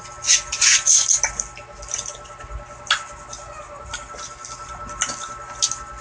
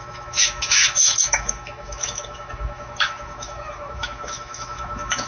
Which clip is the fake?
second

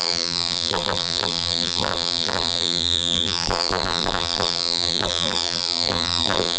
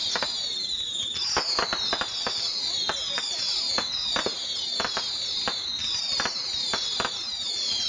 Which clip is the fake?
first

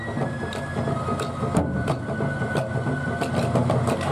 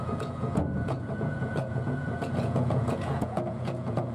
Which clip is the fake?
second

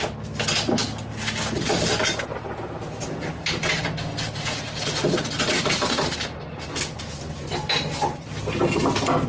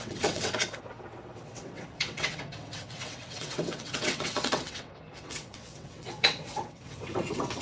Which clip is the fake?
second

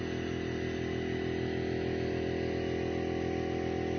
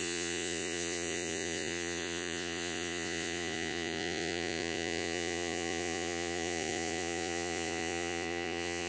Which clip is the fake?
second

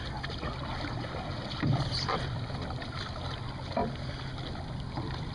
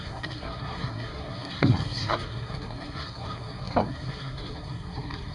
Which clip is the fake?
second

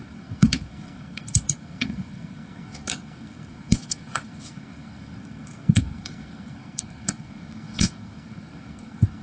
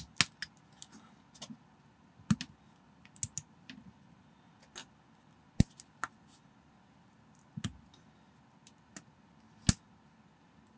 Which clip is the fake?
first